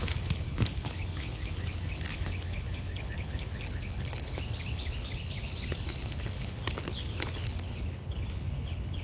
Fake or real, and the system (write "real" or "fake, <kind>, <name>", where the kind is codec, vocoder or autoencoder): fake, codec, HILCodec